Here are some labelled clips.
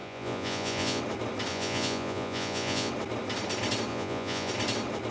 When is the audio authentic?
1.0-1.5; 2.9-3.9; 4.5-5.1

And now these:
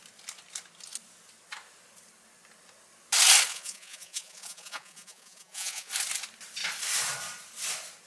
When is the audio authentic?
0.0-3.5; 5.9-8.1

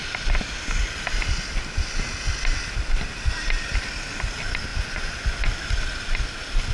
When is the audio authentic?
0.0-4.7; 5.4-6.7

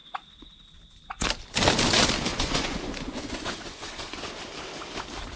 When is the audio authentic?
0.0-2.3; 4.3-5.4

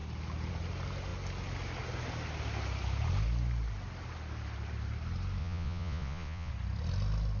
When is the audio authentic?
0.0-5.4; 6.5-7.4

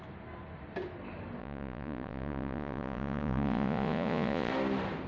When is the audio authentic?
0.0-1.4; 4.5-5.1

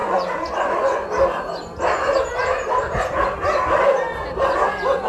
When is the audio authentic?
1.1-5.1

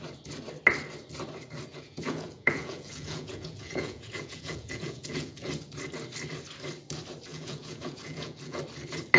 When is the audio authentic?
0.0-1.7; 5.5-7.3; 8.6-9.2